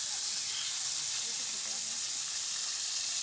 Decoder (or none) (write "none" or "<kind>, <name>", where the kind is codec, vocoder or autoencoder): none